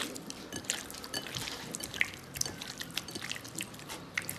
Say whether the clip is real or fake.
real